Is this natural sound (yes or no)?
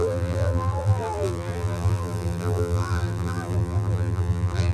no